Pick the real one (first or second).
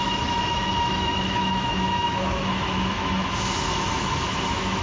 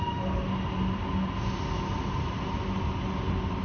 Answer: second